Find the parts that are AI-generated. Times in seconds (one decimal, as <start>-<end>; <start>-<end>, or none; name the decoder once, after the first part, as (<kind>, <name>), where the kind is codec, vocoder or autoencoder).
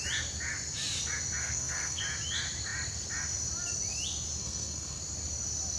1.4-2.0 (codec, SNAC); 4.4-5.0